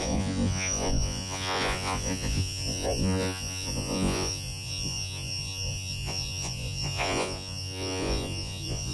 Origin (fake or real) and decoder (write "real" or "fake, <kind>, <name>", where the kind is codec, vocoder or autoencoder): fake, vocoder, Vocos